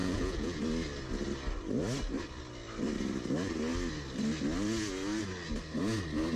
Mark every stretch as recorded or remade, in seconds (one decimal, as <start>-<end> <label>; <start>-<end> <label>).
0.0-0.6 remade; 0.6-6.4 recorded

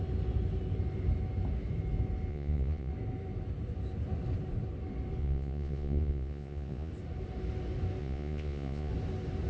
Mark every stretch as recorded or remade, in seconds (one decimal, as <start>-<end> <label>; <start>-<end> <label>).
0.0-2.3 recorded; 2.3-2.9 remade; 2.9-5.2 recorded; 5.2-6.9 remade; 6.9-8.0 recorded; 8.0-8.9 remade; 8.9-9.5 recorded

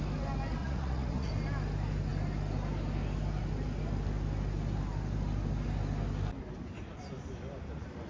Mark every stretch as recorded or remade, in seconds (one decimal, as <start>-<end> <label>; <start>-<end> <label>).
0.0-0.6 recorded; 0.6-1.3 remade; 1.3-8.1 recorded

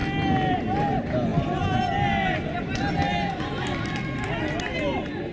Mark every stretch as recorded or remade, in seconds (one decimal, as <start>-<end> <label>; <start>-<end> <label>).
0.0-5.3 recorded

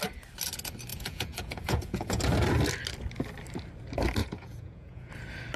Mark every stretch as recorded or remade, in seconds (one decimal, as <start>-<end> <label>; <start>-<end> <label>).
0.0-0.9 recorded; 0.9-2.2 remade; 2.2-4.2 recorded; 4.2-5.1 remade; 5.1-5.6 recorded

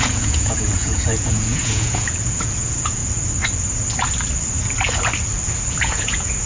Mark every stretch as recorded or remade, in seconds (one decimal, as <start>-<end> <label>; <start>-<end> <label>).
0.0-3.0 remade; 3.0-5.7 recorded; 5.7-6.5 remade

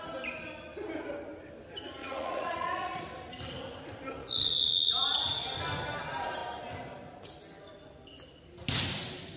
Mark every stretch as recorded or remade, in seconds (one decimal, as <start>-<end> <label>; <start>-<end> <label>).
0.0-2.0 recorded; 2.0-3.0 remade; 3.0-4.2 recorded; 4.2-4.9 remade; 4.9-9.4 recorded

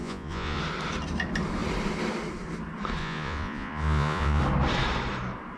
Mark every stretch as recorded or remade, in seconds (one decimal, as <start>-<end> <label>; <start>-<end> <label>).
0.0-0.6 remade; 0.6-3.0 recorded; 3.0-4.4 remade; 4.4-5.6 recorded